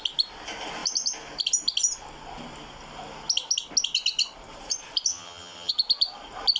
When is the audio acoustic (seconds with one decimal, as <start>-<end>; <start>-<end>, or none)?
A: 0.0-5.1; 5.7-6.6